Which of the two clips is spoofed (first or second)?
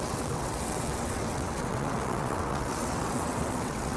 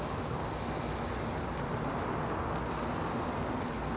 first